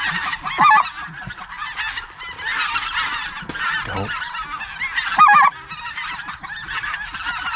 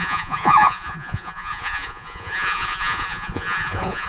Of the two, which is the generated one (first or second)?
second